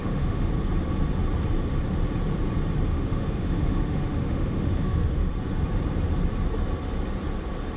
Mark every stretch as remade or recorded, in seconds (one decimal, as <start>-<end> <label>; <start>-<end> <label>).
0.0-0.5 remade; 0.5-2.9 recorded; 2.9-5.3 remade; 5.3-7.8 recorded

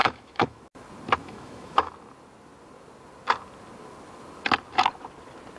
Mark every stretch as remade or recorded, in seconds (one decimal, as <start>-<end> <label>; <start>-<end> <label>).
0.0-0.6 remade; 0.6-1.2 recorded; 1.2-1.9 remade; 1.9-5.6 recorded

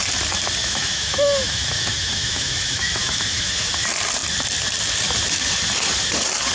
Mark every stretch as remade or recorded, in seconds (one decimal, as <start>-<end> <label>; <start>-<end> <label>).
0.0-0.6 recorded; 0.6-3.7 remade; 3.7-6.5 recorded